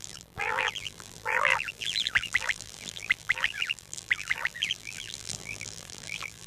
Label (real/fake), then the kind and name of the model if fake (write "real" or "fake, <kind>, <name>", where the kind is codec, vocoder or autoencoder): fake, vocoder, BigVGAN v2